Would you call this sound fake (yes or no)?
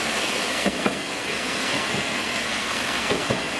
yes